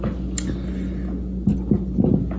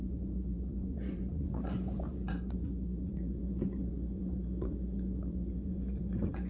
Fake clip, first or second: second